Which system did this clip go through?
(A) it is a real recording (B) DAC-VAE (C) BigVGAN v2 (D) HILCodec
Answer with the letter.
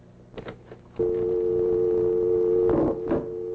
A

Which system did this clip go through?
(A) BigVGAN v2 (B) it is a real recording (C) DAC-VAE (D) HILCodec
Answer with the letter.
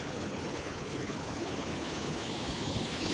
D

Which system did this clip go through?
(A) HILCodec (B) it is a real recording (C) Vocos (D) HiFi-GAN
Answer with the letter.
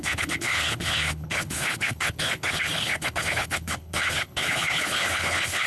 A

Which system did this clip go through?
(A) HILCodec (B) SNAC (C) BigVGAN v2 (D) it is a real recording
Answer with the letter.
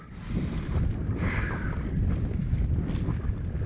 D